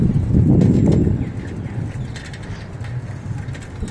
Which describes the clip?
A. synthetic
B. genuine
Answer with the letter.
B